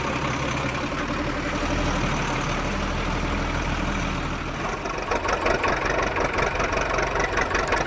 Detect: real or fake real